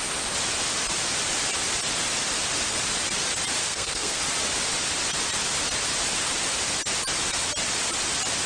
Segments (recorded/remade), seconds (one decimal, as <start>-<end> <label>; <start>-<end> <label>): 0.0-3.6 recorded; 3.6-4.2 remade; 4.2-8.5 recorded